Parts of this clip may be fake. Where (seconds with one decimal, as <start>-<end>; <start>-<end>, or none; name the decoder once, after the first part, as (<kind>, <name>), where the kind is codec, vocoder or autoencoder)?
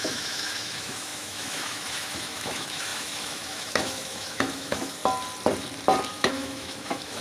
0.0-5.0 (autoencoder, DAC-VAE); 6.1-7.2